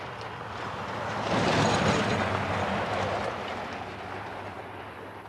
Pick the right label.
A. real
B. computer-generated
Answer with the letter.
A